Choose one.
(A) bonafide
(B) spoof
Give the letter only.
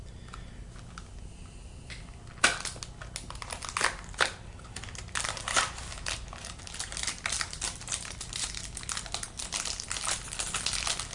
A